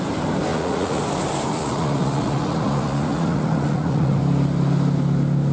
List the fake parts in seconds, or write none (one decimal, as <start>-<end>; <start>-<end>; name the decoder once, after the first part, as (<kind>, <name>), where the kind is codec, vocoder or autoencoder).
0.5-1.0 (vocoder, Vocos); 1.5-4.2